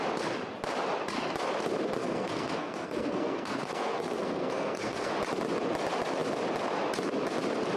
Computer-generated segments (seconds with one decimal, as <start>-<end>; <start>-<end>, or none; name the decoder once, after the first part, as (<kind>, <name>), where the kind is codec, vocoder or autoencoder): 2.0-5.1 (codec, SNAC)

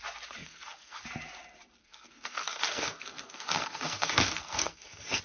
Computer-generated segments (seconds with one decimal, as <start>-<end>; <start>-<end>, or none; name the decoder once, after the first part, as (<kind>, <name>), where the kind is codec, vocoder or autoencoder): 0.4-1.0 (codec, SNAC); 1.8-5.2